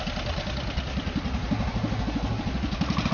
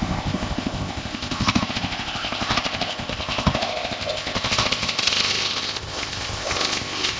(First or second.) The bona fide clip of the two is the first